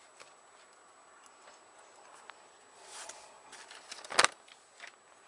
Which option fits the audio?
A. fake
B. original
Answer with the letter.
B